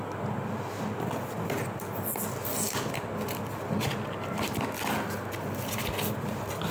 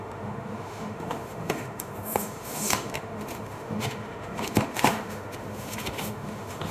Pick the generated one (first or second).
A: second